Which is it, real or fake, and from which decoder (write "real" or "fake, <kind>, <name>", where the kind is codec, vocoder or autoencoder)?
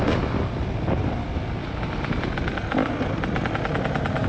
real